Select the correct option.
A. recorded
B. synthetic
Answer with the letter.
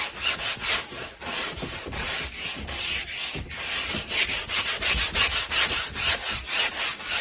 B